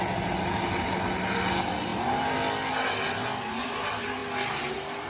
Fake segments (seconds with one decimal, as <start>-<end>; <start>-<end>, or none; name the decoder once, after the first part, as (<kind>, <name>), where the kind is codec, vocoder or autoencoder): none